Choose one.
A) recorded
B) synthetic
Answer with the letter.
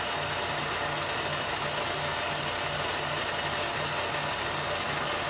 A